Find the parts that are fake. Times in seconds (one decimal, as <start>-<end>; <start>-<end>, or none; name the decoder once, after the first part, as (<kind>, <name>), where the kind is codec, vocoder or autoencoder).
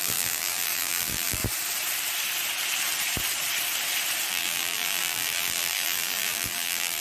0.0-1.4 (vocoder, BigVGAN v2); 4.3-7.0